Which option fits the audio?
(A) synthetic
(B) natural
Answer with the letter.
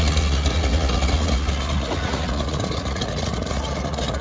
A